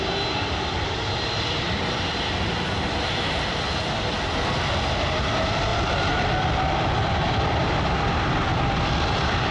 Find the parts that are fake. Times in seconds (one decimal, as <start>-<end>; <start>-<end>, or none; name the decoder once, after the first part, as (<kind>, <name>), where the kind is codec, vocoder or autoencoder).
5.7-6.5 (vocoder, BigVGAN v2); 7.6-9.5